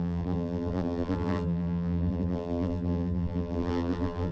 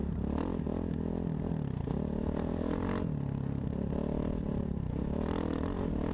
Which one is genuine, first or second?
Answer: second